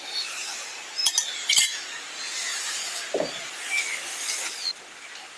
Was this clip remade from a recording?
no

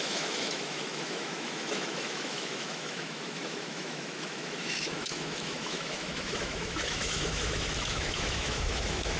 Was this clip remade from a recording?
yes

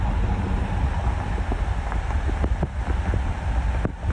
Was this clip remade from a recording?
no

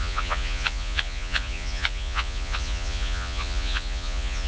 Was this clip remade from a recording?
yes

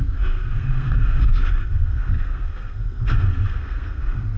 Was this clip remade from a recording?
yes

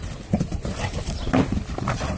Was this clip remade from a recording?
no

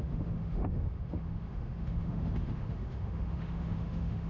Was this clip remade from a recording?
yes